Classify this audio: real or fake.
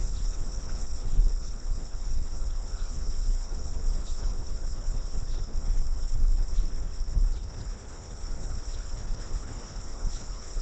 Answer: fake